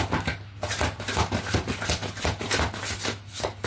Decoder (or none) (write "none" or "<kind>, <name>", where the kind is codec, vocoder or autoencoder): none